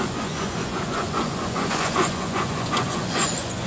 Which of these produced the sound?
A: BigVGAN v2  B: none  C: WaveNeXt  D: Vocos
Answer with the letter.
D